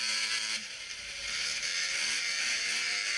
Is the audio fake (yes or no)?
yes